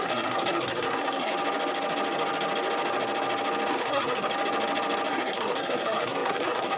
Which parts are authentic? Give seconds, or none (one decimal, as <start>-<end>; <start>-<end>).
1.3-3.7; 4.3-5.1